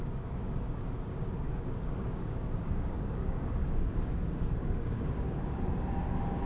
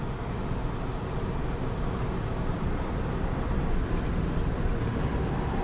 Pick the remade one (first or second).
first